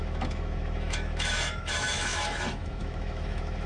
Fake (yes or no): yes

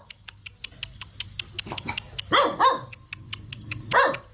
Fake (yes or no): no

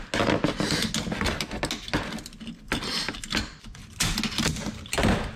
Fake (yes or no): no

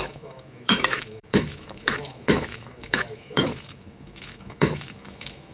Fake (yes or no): yes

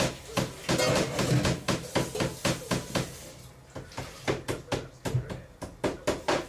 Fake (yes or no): no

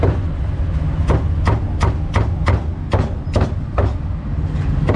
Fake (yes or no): no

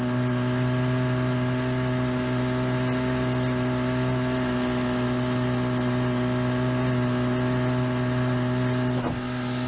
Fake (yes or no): no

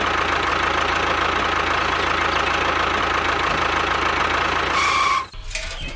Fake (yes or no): no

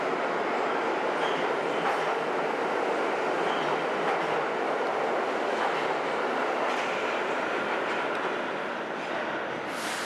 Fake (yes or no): no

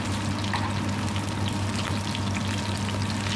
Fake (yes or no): no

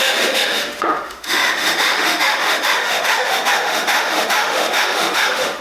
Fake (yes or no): yes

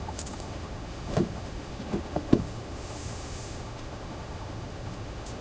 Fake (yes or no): yes